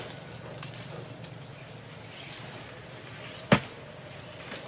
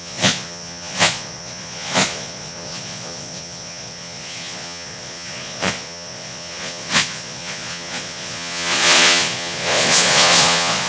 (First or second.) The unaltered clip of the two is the first